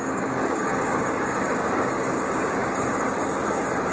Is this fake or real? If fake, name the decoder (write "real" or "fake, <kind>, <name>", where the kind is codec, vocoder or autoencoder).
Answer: fake, codec, DAC